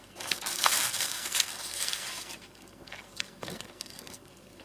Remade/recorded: remade